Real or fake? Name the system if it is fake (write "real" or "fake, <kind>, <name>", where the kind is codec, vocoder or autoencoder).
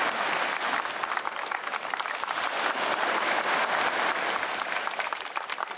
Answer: real